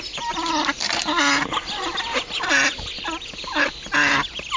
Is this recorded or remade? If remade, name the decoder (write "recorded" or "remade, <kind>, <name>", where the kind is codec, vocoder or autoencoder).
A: recorded